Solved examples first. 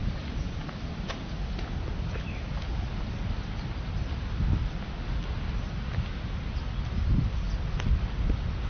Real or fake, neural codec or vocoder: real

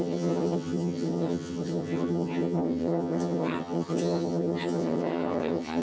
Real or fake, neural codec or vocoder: fake, vocoder, HiFi-GAN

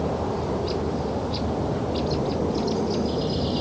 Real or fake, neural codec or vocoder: real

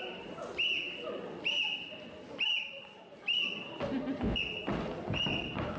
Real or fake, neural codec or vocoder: real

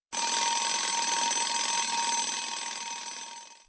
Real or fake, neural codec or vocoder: real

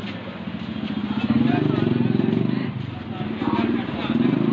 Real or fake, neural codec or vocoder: real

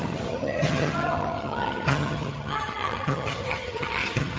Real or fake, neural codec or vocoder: fake, vocoder, HiFi-GAN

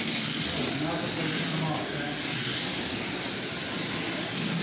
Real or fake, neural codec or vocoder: real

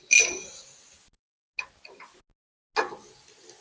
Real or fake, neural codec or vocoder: real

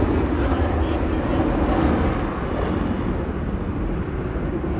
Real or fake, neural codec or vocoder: real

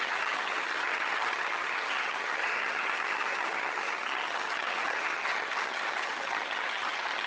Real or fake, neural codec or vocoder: fake, vocoder, HiFi-GAN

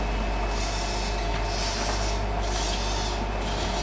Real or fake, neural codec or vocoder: real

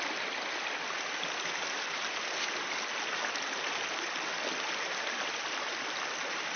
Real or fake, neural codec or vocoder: real